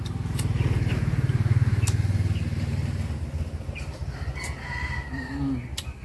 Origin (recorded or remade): recorded